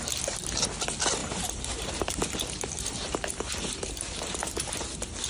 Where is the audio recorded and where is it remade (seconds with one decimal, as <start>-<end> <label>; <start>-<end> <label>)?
0.0-1.2 recorded; 1.2-2.1 remade; 2.1-5.3 recorded